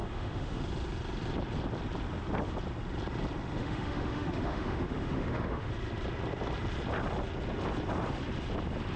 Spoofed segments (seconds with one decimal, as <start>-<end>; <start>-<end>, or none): 0.0-0.6; 3.6-5.7